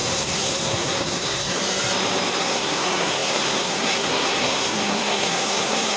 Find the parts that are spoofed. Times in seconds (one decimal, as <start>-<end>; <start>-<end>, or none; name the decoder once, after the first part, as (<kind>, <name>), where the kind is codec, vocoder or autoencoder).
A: 0.0-1.6 (codec, SNAC); 2.4-6.0